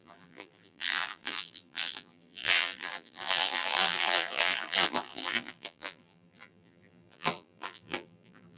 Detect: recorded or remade remade